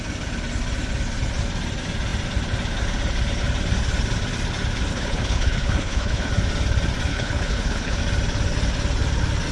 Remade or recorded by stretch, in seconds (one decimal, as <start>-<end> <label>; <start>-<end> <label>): 0.0-4.9 recorded; 4.9-6.3 remade; 6.3-7.1 recorded; 7.1-8.0 remade; 8.0-9.5 recorded

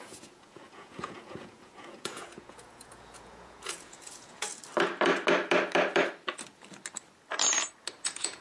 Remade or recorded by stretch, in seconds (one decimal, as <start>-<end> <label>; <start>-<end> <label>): 0.0-4.5 remade; 4.5-8.0 recorded; 8.0-8.4 remade